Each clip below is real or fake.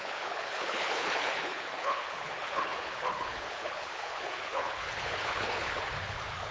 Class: fake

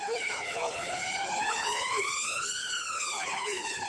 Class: fake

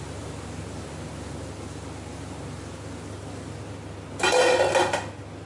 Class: real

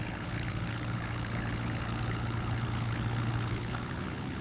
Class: fake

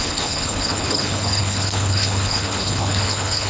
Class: fake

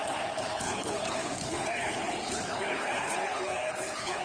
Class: fake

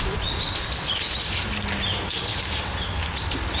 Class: real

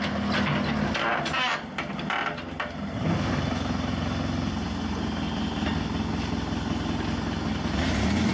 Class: real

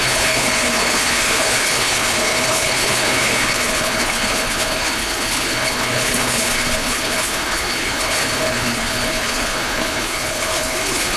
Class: fake